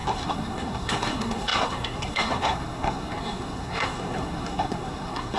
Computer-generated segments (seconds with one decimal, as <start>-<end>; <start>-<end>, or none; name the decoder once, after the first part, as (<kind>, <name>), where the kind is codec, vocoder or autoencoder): 0.0-5.4 (codec, SNAC)